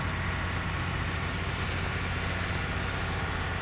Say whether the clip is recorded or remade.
recorded